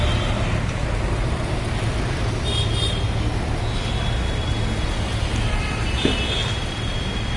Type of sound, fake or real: real